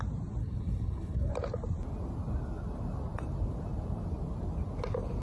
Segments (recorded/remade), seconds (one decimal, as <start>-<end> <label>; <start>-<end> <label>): 0.0-0.4 recorded; 0.4-1.3 remade; 1.3-5.2 recorded